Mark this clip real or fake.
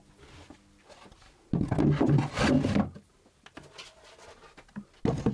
real